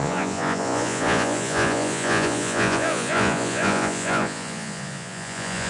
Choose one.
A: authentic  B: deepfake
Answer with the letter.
B